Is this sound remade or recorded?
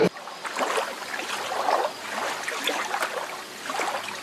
recorded